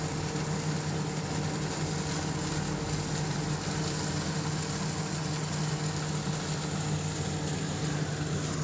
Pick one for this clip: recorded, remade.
recorded